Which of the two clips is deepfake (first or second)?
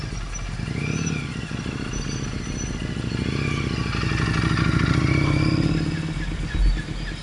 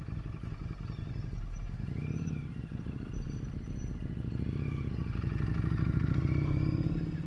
second